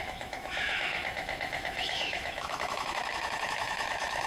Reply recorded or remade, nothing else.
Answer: remade